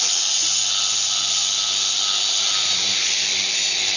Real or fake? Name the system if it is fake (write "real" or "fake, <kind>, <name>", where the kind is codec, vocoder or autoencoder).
real